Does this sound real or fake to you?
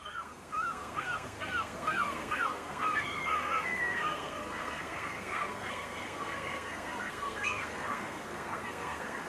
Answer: fake